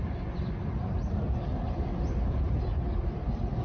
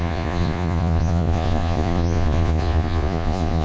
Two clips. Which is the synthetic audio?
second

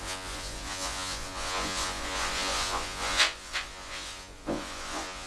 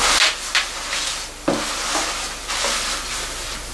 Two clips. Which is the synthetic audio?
first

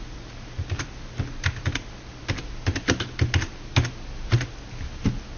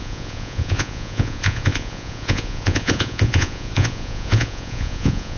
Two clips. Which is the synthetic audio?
second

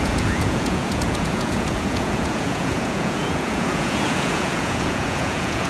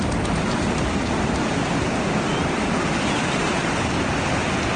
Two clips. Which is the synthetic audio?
first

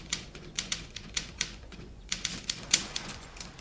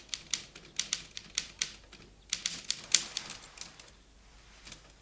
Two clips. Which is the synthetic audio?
first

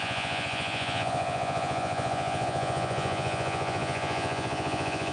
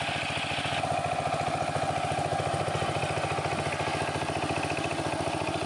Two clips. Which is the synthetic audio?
first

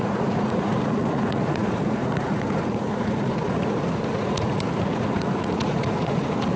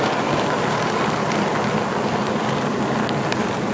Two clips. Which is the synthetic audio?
first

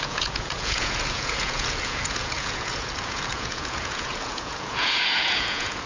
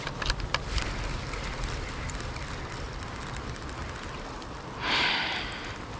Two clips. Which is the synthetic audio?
first